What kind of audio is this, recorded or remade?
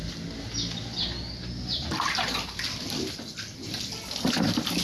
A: recorded